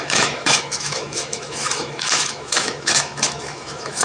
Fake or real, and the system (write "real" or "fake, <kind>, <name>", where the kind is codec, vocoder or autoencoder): fake, autoencoder, DAC-VAE